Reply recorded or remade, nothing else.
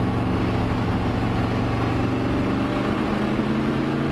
recorded